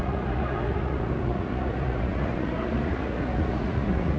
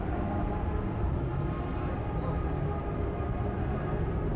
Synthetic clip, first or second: first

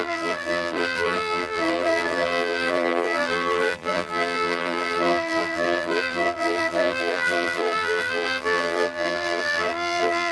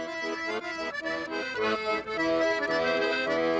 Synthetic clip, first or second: first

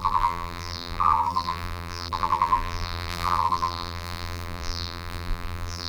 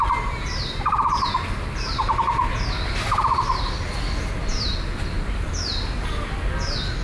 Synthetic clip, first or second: first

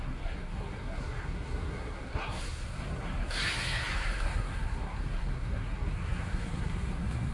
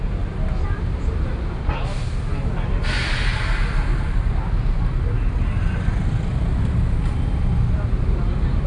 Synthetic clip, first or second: first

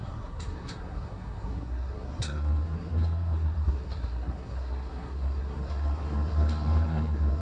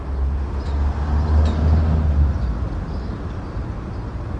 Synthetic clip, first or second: first